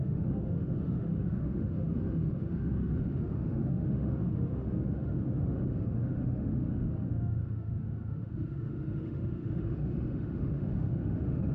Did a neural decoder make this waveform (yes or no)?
yes